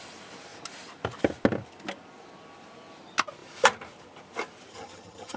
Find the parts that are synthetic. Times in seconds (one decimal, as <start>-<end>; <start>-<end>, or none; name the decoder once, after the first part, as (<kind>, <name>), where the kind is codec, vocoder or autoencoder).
4.7-5.4 (vocoder, HiFi-GAN)